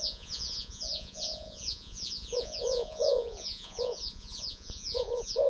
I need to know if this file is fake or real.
fake